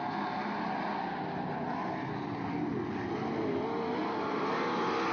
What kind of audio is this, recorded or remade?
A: recorded